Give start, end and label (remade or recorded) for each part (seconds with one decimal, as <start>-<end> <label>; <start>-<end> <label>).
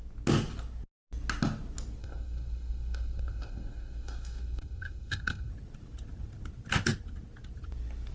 0.0-2.0 recorded; 2.0-5.5 remade; 5.5-8.1 recorded